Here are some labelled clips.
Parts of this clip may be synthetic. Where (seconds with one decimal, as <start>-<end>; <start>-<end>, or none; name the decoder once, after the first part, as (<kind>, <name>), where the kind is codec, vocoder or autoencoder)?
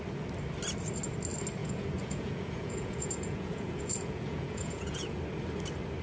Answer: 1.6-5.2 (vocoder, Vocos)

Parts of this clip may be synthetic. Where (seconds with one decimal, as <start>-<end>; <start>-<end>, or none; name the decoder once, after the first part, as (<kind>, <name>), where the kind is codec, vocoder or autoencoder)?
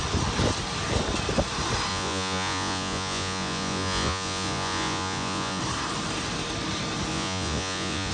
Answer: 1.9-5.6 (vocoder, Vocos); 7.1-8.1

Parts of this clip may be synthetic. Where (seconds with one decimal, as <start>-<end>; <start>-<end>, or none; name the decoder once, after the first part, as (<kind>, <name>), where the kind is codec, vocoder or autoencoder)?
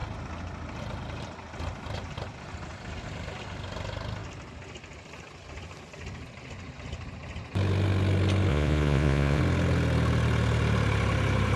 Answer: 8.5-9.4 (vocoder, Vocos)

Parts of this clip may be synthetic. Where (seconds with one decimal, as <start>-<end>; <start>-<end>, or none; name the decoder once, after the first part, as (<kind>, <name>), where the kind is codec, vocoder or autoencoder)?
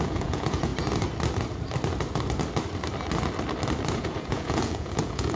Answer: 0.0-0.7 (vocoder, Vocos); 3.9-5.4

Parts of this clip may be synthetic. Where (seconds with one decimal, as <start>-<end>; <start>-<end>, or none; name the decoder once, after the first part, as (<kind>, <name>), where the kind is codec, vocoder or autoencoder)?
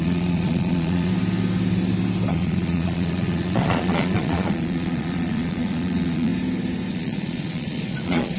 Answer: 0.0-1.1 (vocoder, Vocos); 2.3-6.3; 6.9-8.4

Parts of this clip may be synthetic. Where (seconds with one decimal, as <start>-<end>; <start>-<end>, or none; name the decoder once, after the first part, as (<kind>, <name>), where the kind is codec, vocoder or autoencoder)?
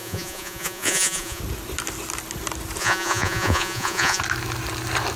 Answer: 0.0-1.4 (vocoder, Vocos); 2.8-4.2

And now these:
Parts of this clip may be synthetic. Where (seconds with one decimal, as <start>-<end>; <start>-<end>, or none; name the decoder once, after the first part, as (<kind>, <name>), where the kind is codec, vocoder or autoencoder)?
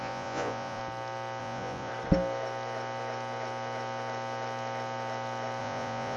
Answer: 0.0-0.8 (vocoder, Vocos); 1.4-1.9; 5.6-6.2